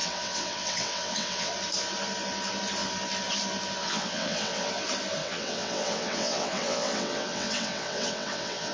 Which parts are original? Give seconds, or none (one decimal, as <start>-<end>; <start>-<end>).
1.5-3.8; 4.7-5.2